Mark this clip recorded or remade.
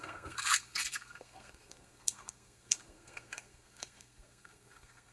remade